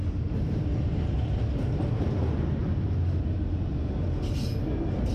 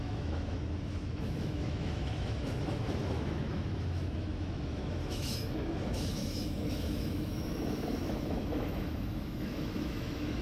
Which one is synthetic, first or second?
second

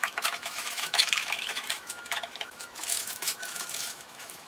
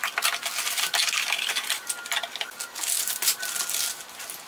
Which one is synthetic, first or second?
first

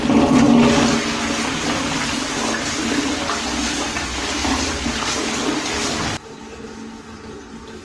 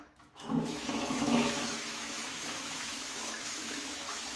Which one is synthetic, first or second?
second